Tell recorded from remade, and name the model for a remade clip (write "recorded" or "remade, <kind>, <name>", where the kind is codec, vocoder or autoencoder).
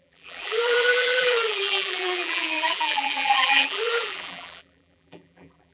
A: remade, vocoder, BigVGAN v2